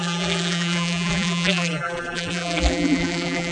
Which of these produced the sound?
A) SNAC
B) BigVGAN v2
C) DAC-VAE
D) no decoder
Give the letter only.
B